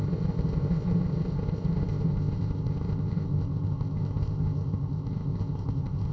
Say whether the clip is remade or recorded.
remade